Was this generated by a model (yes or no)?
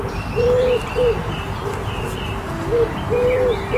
no